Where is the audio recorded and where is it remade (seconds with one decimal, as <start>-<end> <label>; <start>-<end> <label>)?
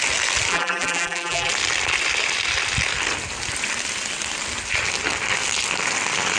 0.0-0.5 recorded; 0.5-1.5 remade; 1.5-6.4 recorded